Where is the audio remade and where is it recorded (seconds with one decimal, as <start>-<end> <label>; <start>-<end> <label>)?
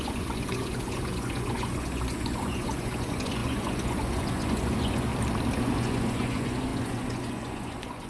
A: 0.0-5.1 remade; 5.1-5.6 recorded; 5.6-8.1 remade